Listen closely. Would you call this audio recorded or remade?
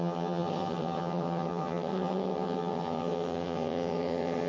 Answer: remade